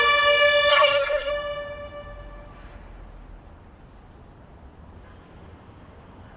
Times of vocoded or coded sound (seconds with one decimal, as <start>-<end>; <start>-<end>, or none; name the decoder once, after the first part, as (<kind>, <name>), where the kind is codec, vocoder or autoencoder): 0.7-1.3 (codec, SNAC)

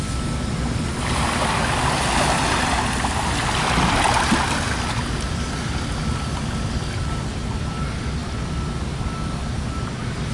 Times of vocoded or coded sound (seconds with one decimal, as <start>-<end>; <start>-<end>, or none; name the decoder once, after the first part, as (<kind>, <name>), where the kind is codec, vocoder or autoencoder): none

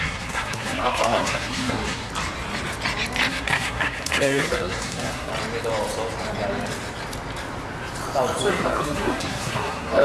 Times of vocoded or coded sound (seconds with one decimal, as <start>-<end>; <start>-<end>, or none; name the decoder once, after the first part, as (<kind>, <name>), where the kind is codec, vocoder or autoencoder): 0.0-2.1 (codec, SNAC); 3.3-5.3; 8.5-10.0

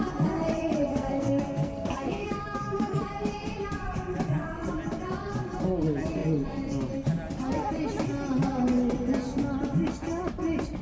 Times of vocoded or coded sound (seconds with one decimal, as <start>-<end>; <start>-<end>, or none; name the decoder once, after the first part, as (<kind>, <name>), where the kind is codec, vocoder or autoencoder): 0.9-3.0 (codec, SNAC)

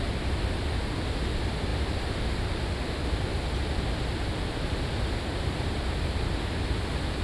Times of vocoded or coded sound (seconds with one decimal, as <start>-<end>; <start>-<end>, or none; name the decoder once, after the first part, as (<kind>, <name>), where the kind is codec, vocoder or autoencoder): none